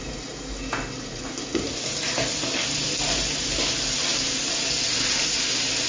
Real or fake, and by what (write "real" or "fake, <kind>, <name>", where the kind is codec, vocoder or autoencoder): real